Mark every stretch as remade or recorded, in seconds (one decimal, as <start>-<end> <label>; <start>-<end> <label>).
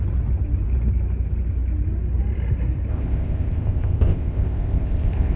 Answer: 0.0-2.9 recorded; 2.9-5.4 remade